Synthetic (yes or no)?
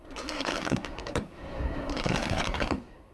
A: yes